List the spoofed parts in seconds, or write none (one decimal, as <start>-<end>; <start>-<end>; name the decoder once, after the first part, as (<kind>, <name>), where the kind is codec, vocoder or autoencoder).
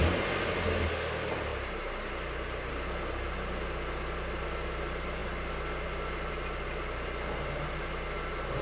1.5-2.7 (vocoder, BigVGAN v2)